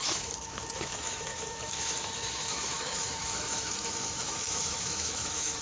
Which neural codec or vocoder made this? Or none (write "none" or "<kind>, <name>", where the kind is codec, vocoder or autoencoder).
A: autoencoder, DAC-VAE